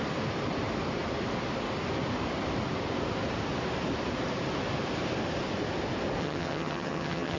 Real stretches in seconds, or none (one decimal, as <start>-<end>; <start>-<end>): 0.0-6.2